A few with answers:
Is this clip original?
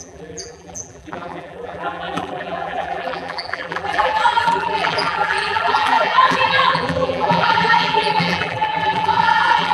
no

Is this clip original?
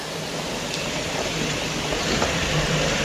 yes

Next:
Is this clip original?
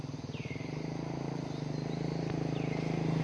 yes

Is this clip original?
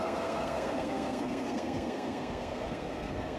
no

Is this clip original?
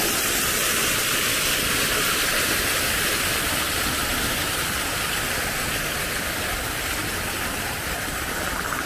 yes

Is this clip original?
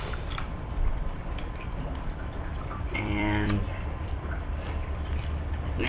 no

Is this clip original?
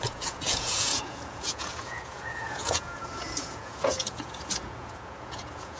no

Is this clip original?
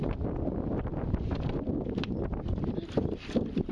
yes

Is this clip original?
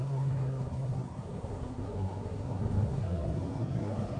no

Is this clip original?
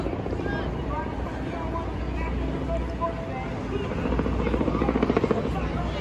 yes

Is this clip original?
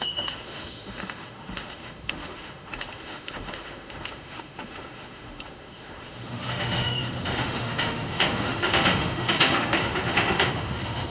no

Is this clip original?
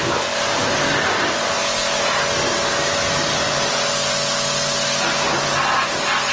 yes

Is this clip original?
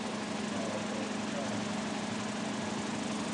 yes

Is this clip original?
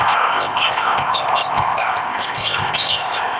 no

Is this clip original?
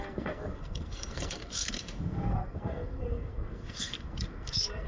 no